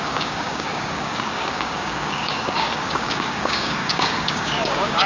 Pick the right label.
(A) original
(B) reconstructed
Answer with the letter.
B